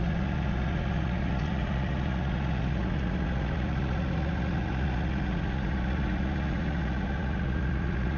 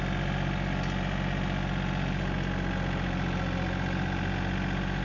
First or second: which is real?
second